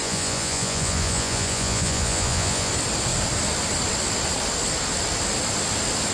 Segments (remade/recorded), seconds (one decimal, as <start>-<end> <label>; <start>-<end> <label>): 0.0-2.7 remade; 2.7-6.1 recorded